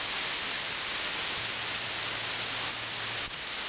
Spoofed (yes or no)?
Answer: no